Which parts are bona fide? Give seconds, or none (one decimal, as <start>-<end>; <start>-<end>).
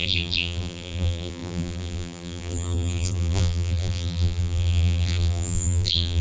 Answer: none